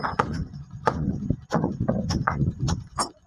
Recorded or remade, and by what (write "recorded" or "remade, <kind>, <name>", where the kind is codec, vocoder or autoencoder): remade, vocoder, Vocos